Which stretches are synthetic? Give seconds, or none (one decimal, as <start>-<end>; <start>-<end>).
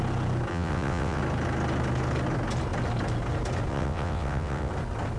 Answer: 0.5-1.2; 3.7-4.7